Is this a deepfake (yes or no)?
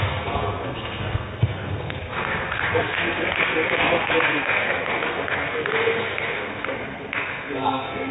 yes